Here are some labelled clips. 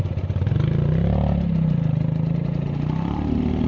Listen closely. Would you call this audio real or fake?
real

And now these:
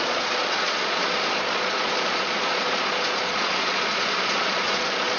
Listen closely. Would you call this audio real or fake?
fake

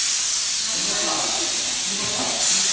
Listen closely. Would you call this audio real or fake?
real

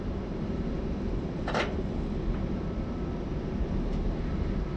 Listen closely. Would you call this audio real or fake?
fake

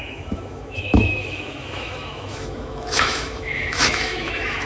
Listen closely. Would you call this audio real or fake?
fake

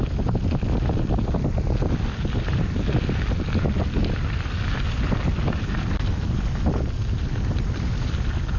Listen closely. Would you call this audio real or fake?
real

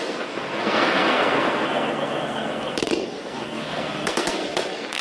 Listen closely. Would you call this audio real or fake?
fake